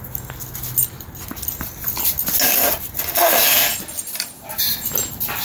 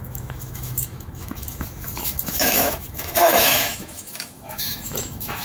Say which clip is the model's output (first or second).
second